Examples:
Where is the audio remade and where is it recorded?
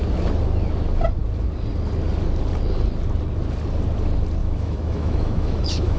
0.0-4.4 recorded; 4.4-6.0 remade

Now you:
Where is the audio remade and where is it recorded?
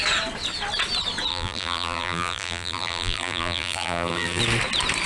0.0-1.3 recorded; 1.3-4.4 remade; 4.4-5.1 recorded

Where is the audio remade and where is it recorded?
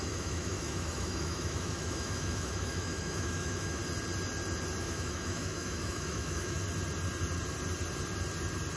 0.0-3.8 remade; 3.8-4.8 recorded; 4.8-6.6 remade; 6.6-8.8 recorded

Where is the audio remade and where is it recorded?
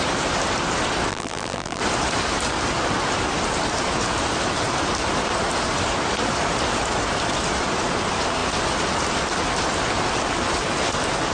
0.0-1.1 recorded; 1.1-1.8 remade; 1.8-11.3 recorded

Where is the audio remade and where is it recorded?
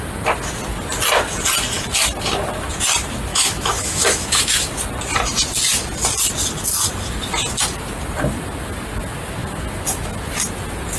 0.0-3.3 recorded; 3.3-4.7 remade; 4.7-11.0 recorded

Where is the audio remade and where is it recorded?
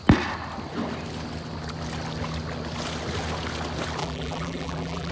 0.0-4.0 recorded; 4.0-5.1 remade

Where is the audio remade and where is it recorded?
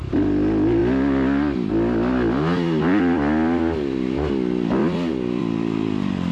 0.0-0.8 remade; 0.8-3.0 recorded; 3.0-6.3 remade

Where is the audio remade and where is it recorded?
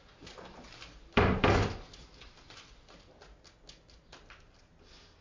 0.0-3.1 remade; 3.1-5.2 recorded